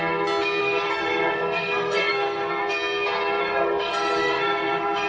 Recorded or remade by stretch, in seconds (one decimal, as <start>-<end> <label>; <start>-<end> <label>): 0.0-0.6 recorded; 0.6-2.7 remade; 2.7-3.4 recorded; 3.4-5.1 remade